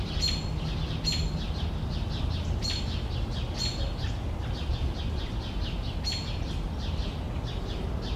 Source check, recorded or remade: recorded